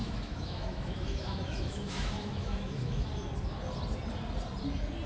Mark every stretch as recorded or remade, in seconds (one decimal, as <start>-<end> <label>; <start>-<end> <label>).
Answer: 0.0-3.1 remade; 3.1-5.1 recorded